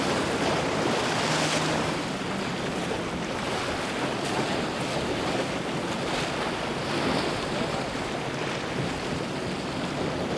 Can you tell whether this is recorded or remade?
recorded